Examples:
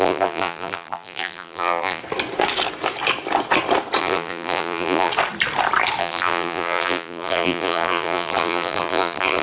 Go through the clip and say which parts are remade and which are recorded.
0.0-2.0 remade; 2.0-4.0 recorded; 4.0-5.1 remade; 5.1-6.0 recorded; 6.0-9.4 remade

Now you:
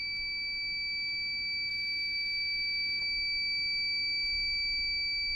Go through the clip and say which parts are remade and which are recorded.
0.0-1.7 recorded; 1.7-3.0 remade; 3.0-5.4 recorded

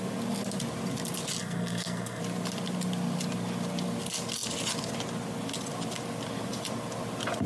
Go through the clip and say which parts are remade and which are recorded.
0.0-1.4 recorded; 1.4-2.2 remade; 2.2-7.5 recorded

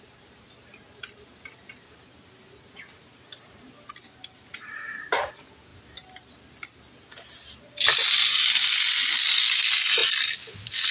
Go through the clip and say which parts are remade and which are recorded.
0.0-10.9 recorded

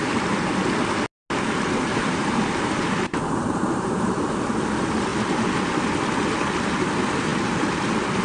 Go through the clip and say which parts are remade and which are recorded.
0.0-1.9 recorded; 1.9-4.3 remade; 4.3-8.2 recorded